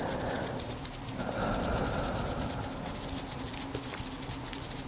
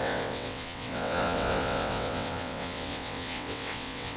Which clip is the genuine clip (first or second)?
first